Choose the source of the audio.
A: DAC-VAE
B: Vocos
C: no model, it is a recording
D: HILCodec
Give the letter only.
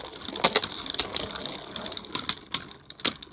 C